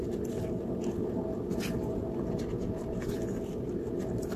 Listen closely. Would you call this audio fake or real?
real